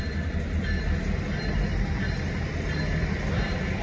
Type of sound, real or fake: real